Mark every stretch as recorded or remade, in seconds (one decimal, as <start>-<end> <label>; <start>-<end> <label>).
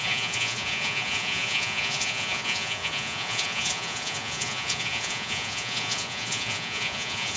0.0-7.4 remade